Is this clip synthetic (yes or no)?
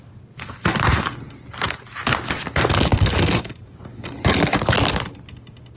no